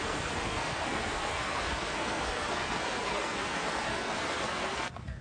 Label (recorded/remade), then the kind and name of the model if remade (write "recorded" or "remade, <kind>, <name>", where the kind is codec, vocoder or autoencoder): remade, codec, SNAC